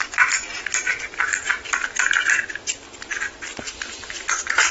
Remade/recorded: recorded